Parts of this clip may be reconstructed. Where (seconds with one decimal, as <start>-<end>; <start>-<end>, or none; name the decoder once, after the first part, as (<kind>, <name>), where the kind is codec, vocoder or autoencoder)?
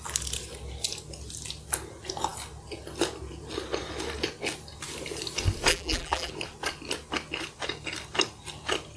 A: 5.7-6.3 (vocoder, BigVGAN v2)